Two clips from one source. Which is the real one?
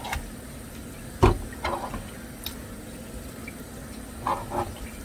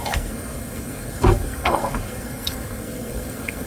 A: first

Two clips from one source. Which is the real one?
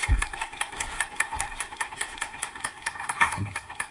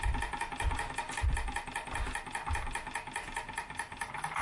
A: second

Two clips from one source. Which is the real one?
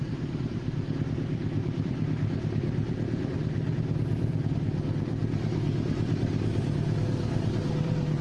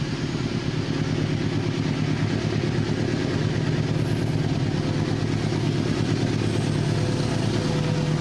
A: second